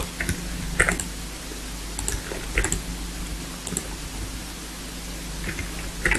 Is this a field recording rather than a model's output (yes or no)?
yes